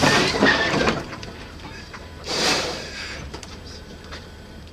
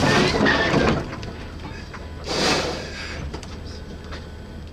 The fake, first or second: first